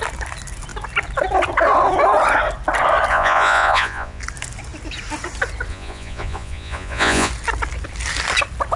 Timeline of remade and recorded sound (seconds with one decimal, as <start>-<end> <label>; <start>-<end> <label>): 0.0-3.1 recorded; 3.1-4.2 remade; 4.2-5.7 recorded; 5.7-7.3 remade; 7.3-8.8 recorded